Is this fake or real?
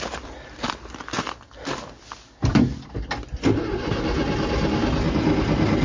real